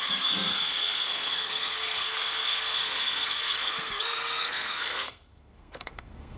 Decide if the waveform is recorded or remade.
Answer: remade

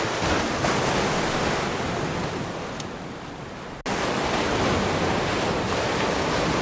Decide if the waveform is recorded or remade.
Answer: recorded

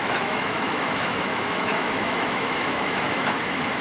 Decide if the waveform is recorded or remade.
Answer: remade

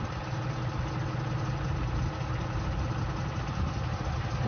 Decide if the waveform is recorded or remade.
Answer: recorded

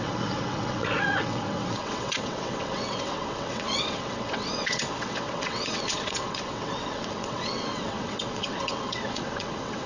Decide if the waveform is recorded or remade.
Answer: remade